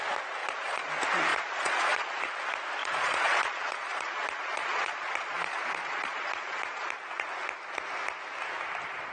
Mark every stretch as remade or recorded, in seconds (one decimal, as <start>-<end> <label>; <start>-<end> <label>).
0.0-0.4 recorded; 0.4-0.9 remade; 0.9-1.3 recorded; 1.3-2.2 remade; 2.2-2.8 recorded; 2.8-6.9 remade; 6.9-9.1 recorded